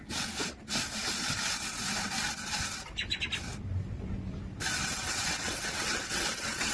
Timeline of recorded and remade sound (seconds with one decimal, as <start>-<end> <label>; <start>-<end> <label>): 0.0-4.8 recorded; 4.8-6.7 remade